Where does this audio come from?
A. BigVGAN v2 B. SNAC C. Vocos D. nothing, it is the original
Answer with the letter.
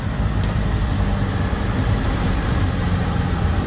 A